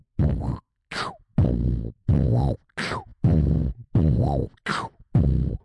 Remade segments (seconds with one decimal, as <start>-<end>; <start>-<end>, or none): none